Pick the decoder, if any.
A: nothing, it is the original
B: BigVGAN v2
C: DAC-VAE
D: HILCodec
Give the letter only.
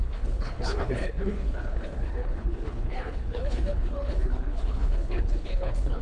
D